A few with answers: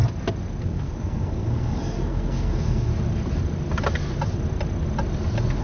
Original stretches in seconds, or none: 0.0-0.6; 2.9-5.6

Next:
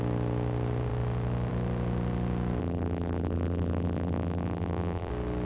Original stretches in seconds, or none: 0.0-2.6; 5.1-5.5

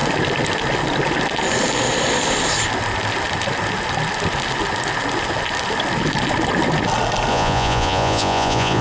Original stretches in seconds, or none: 0.0-7.3

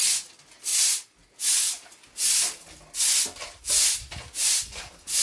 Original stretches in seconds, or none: 0.0-5.2

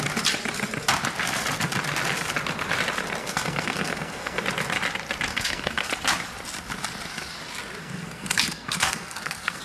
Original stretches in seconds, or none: 0.0-3.2; 4.4-5.3; 5.9-7.8

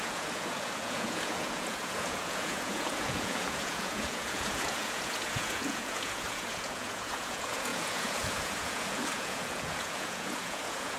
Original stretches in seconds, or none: none

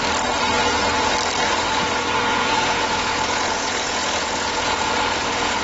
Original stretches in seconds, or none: 0.0-2.3